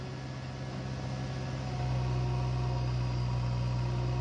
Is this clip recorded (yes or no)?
yes